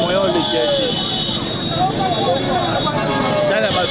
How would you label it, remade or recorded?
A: recorded